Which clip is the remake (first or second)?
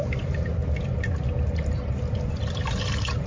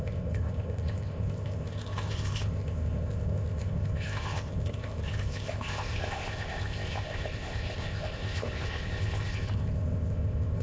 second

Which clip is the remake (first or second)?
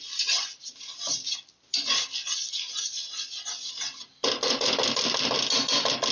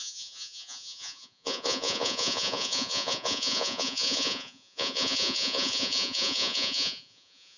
second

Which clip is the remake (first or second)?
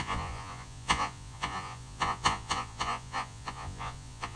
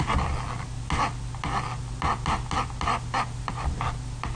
first